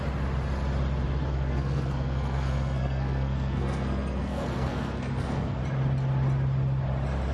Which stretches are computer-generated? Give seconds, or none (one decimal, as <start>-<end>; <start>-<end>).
1.3-5.6